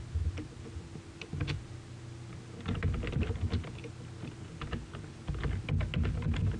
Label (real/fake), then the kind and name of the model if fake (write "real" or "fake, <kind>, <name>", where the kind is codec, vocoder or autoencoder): real